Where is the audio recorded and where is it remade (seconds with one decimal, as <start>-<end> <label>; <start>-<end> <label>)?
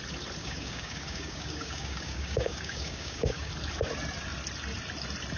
0.0-0.4 recorded; 0.4-3.5 remade; 3.5-5.4 recorded